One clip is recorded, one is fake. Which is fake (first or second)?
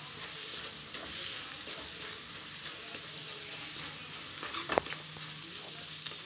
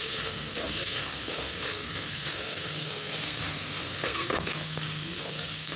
second